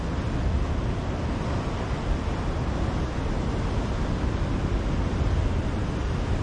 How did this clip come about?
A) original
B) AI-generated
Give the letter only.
A